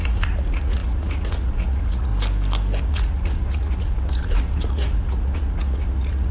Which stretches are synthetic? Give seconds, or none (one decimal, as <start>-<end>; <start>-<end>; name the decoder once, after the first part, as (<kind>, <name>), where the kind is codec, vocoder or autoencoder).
0.0-2.1 (vocoder, Vocos); 2.8-6.3